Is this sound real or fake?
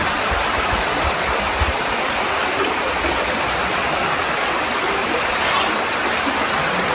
fake